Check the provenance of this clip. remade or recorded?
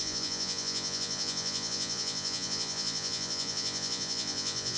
remade